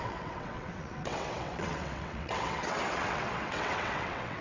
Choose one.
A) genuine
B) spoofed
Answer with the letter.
B